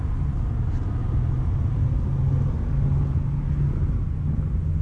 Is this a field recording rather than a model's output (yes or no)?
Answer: yes